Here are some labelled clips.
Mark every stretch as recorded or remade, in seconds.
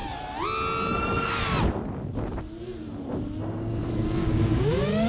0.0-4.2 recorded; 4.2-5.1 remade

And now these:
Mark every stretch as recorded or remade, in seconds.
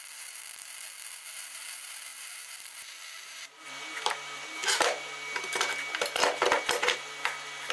0.0-7.7 recorded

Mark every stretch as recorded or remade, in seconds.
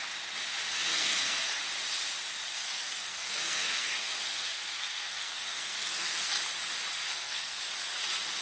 0.0-0.9 recorded; 0.9-1.6 remade; 1.6-2.5 recorded; 2.5-6.3 remade; 6.3-7.0 recorded; 7.0-7.6 remade; 7.6-8.4 recorded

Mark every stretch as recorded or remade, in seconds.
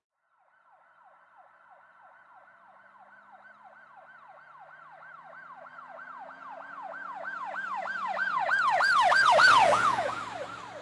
0.0-5.7 recorded; 5.7-7.5 remade; 7.5-8.2 recorded; 8.2-10.2 remade; 10.2-10.8 recorded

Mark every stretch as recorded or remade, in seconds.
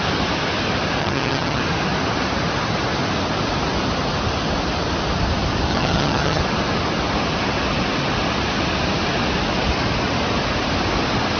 0.0-1.0 recorded; 1.0-1.6 remade; 1.6-5.7 recorded; 5.7-6.4 remade; 6.4-11.4 recorded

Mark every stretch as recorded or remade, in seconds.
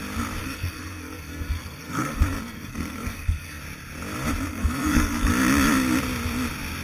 0.0-0.4 recorded; 0.4-3.6 remade; 3.6-4.5 recorded; 4.5-5.3 remade; 5.3-6.8 recorded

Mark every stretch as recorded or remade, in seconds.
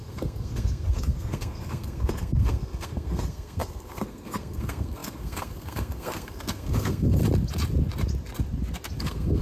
0.0-7.2 remade; 7.2-9.0 recorded; 9.0-9.4 remade